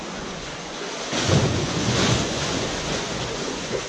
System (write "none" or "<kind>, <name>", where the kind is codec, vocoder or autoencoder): vocoder, Vocos